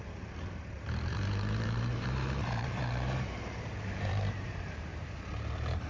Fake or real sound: fake